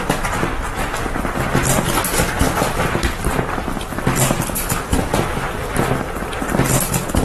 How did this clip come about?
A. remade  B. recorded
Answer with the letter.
B